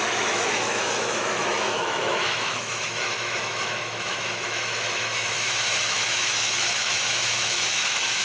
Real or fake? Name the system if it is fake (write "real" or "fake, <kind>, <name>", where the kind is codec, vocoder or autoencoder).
fake, autoencoder, DAC-VAE